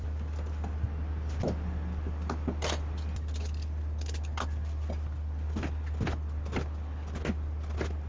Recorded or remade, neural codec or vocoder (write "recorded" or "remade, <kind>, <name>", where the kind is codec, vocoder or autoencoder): recorded